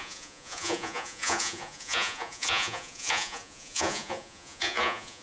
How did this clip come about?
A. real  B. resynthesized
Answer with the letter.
B